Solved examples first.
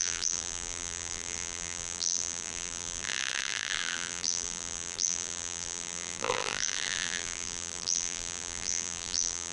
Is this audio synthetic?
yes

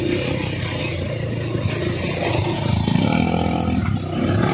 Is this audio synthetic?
no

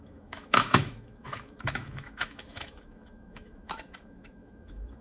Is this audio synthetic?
yes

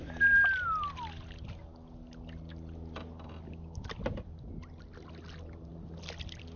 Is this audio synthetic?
no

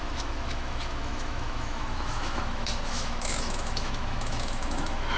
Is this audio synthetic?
yes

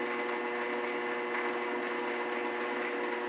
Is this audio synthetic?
no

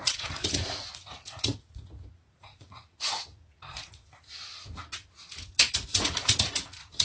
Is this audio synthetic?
yes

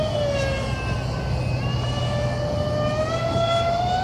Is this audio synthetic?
no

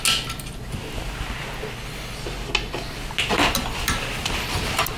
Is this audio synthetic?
no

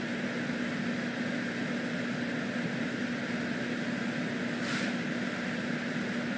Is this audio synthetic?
no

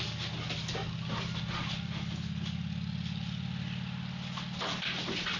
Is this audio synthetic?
no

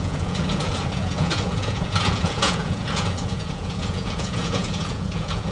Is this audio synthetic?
yes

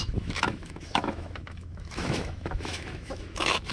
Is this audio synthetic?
yes